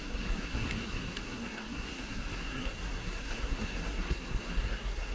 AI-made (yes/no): yes